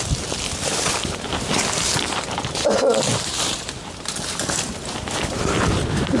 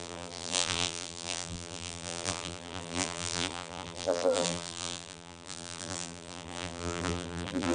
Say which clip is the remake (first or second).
second